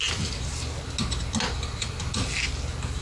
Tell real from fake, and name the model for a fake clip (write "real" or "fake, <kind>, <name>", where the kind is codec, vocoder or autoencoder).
real